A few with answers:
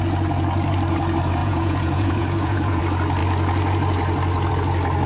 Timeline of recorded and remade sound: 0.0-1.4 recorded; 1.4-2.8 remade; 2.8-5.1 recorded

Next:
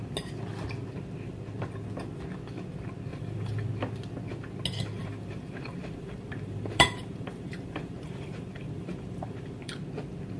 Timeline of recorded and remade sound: 0.0-3.1 recorded; 3.1-3.7 remade; 3.7-5.0 recorded; 5.0-9.8 remade; 9.8-10.4 recorded